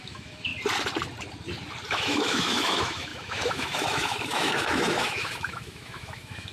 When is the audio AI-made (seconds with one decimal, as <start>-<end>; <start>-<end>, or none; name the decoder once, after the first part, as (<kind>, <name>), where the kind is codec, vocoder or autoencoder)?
0.0-0.5 (autoencoder, DAC-VAE); 1.9-6.5